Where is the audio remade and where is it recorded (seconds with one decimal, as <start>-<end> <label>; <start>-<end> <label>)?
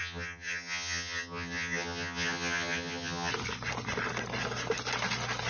0.0-3.3 remade; 3.3-5.5 recorded